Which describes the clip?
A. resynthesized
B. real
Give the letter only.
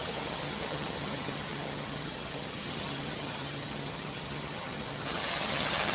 A